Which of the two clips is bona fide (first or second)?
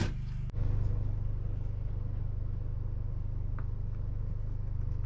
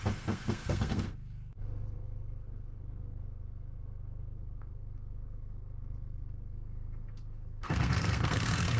first